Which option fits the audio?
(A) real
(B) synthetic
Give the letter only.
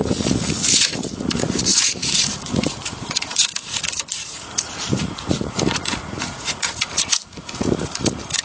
B